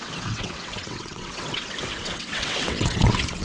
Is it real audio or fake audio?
fake